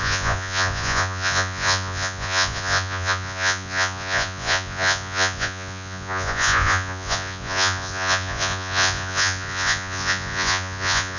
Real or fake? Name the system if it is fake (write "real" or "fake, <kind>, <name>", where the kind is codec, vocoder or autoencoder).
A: fake, vocoder, Vocos